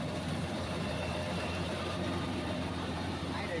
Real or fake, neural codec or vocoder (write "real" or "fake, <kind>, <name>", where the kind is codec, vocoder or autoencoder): fake, vocoder, BigVGAN v2